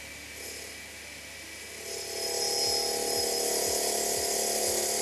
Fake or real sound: real